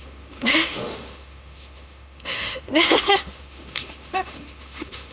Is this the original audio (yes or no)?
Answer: no